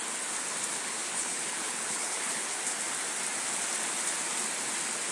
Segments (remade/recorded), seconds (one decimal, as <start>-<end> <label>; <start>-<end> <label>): 0.0-1.0 recorded; 1.0-2.6 remade; 2.6-5.1 recorded